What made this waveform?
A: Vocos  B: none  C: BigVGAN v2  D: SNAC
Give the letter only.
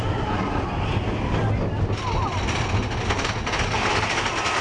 B